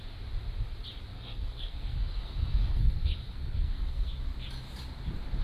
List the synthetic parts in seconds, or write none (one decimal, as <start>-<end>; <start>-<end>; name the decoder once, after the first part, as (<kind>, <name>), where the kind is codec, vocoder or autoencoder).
1.1-4.1 (codec, SNAC)